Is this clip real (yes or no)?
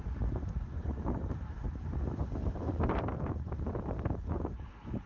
no